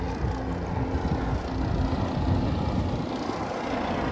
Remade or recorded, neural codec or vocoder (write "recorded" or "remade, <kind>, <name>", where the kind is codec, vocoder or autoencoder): recorded